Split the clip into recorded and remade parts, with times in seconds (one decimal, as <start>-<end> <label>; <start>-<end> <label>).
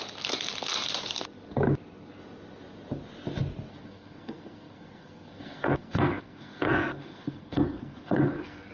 0.0-3.7 recorded; 3.7-8.7 remade